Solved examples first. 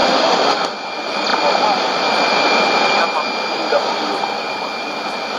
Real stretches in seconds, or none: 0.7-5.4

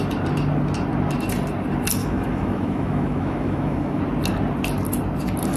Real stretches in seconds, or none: 0.0-2.0; 4.0-5.6

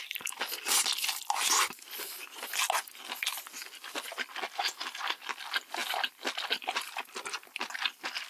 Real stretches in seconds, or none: 0.0-8.3

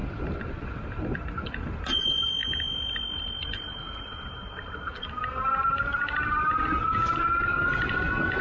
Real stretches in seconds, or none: 0.0-8.4

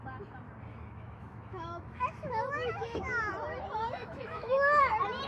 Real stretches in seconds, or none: 0.0-0.7; 3.3-4.0; 4.8-5.3